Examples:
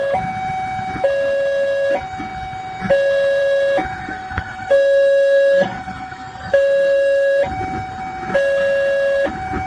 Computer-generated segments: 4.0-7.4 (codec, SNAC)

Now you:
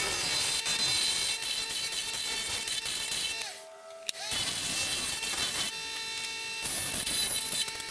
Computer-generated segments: none

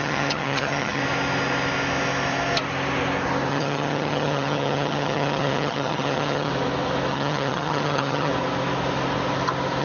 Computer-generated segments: 0.0-1.0 (vocoder, HiFi-GAN); 3.5-6.5; 7.1-8.3

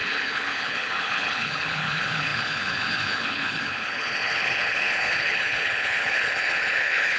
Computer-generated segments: 0.0-7.2 (codec, HILCodec)

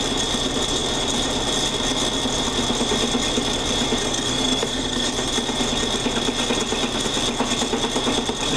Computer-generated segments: 4.0-5.3 (codec, SNAC)

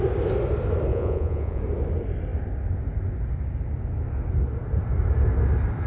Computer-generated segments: 0.9-1.6 (vocoder, Vocos)